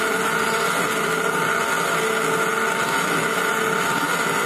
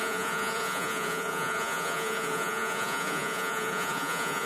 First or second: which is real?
first